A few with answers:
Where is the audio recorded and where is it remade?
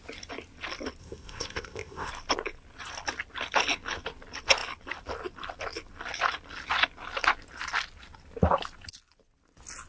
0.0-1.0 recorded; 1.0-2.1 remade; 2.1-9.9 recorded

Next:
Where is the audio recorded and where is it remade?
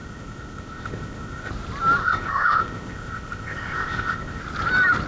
0.0-1.5 remade; 1.5-2.0 recorded; 2.0-4.4 remade; 4.4-5.1 recorded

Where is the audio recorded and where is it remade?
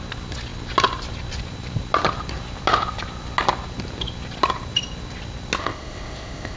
0.0-5.6 recorded; 5.6-6.6 remade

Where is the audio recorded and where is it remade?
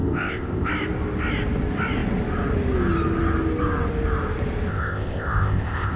0.0-0.7 remade; 0.7-4.7 recorded; 4.7-6.0 remade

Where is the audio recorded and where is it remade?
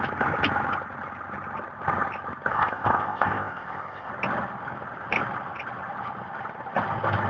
0.0-2.5 recorded; 2.5-4.1 remade; 4.1-7.3 recorded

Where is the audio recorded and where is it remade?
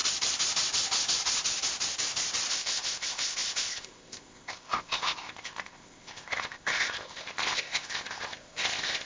0.0-2.5 recorded; 2.5-9.0 remade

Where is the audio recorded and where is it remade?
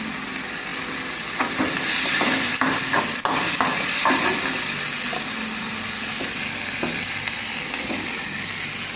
0.0-9.0 recorded